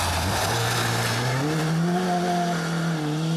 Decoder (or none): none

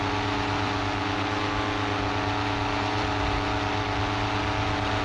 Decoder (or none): none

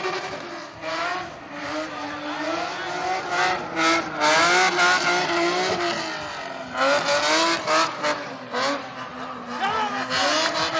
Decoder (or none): none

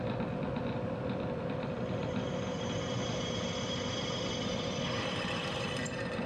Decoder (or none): vocoder, BigVGAN v2